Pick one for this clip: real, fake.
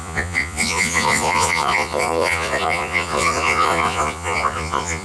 fake